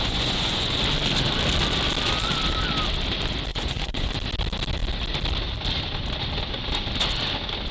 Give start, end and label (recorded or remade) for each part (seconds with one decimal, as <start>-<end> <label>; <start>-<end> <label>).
0.0-0.8 remade; 0.8-3.5 recorded; 3.5-4.1 remade; 4.1-7.7 recorded